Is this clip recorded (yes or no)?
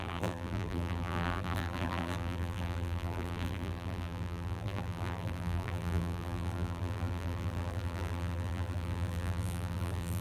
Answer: no